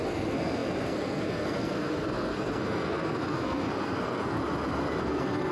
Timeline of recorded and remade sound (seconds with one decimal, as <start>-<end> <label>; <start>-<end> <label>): 0.0-4.4 remade; 4.4-5.0 recorded; 5.0-5.5 remade